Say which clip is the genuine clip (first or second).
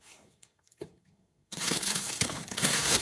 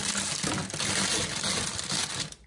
second